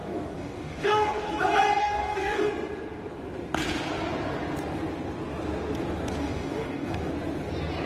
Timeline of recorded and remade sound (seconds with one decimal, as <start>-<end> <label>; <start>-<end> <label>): 0.0-1.3 remade; 1.3-1.8 recorded; 1.8-2.5 remade; 2.5-6.2 recorded; 6.2-7.1 remade; 7.1-7.9 recorded

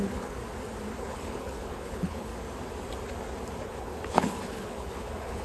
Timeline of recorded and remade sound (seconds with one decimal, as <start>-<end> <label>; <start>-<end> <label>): 0.0-0.4 remade; 0.4-1.0 recorded; 1.0-2.3 remade; 2.3-3.6 recorded; 3.6-5.4 remade

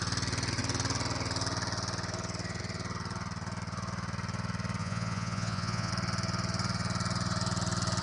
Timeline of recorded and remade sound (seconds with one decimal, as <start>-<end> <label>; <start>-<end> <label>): 0.0-4.8 recorded; 4.8-5.9 remade; 5.9-8.0 recorded